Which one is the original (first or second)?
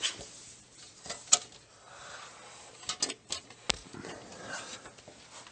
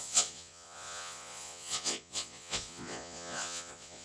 first